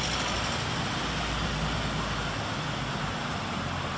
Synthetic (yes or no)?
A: no